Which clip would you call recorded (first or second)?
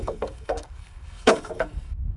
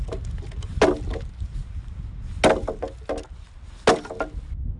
second